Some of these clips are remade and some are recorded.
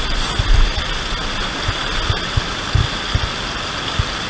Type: recorded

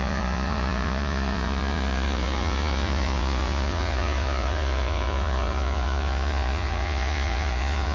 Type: remade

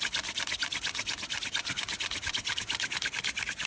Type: recorded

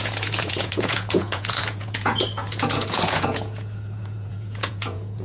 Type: remade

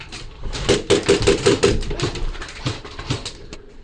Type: recorded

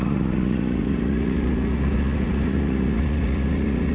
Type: remade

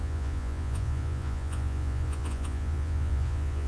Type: remade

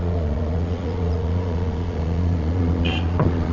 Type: remade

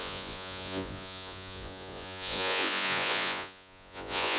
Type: remade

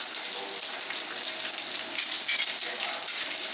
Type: recorded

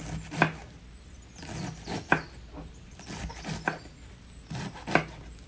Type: recorded